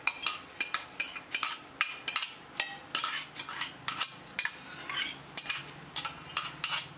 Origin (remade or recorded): recorded